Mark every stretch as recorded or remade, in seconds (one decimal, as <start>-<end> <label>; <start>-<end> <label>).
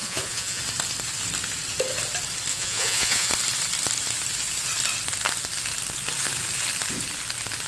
0.0-0.6 remade; 0.6-2.5 recorded; 2.5-3.3 remade; 3.3-7.7 recorded